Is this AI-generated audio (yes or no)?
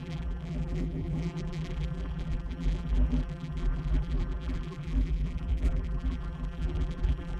yes